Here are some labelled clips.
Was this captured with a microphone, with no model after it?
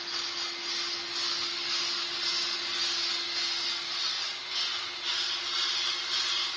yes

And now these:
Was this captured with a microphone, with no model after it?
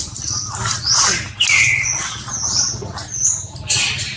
yes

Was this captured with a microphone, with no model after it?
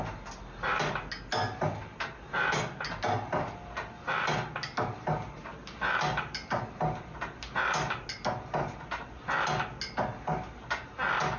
yes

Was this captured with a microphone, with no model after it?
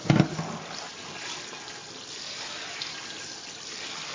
yes